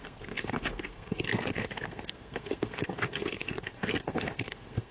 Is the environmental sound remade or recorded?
remade